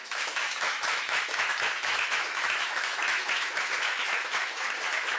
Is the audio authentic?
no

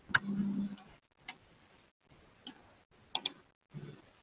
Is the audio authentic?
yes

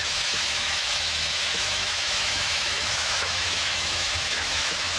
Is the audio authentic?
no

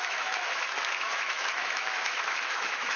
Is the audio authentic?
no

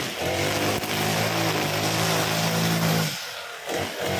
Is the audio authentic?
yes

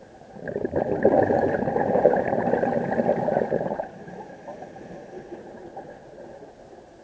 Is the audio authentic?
yes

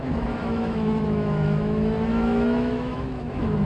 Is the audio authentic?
no